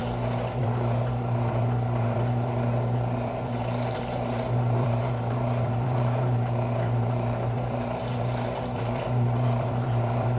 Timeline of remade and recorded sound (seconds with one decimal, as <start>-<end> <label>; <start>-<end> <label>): 0.0-0.6 recorded; 0.6-10.4 remade